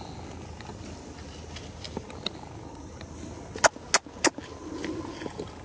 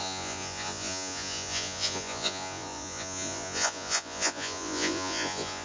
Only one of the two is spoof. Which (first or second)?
second